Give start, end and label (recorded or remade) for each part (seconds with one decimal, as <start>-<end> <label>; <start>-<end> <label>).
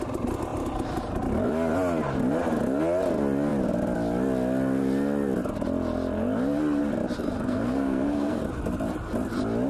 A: 0.0-7.2 recorded; 7.2-8.4 remade; 8.4-9.7 recorded